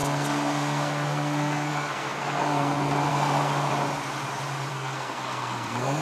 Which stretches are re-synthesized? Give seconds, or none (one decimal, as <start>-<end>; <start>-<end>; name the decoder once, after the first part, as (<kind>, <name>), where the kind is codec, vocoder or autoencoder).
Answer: 0.0-3.7 (codec, SNAC); 4.7-6.0